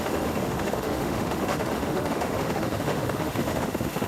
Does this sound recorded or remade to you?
remade